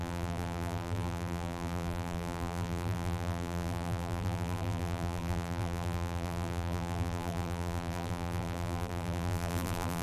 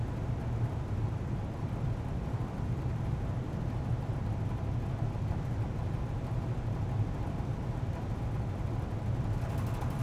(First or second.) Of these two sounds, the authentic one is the second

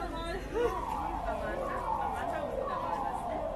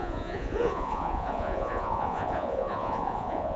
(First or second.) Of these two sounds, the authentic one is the first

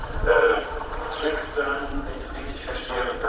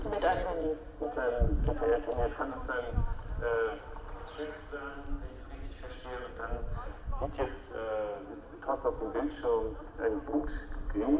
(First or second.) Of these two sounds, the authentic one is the second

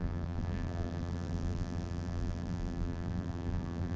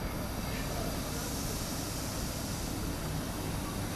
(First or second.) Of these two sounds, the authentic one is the second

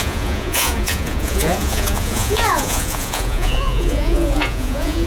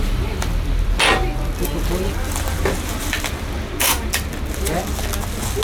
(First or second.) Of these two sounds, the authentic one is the second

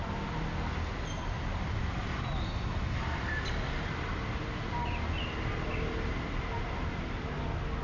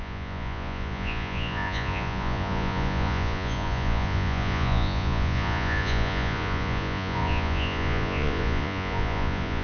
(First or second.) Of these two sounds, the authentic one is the first